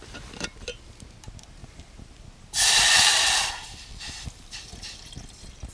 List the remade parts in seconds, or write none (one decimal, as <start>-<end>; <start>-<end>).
1.6-3.5